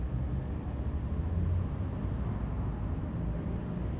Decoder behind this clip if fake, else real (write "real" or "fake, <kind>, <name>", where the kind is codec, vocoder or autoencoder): real